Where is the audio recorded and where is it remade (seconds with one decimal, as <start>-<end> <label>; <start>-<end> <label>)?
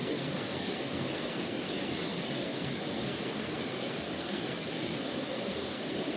0.0-6.2 remade